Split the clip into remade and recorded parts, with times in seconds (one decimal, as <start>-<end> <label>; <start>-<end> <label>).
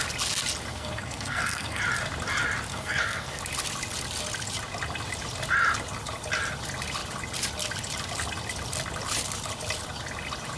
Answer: 0.0-0.7 recorded; 0.7-1.8 remade; 1.8-2.7 recorded; 2.7-3.4 remade; 3.4-10.6 recorded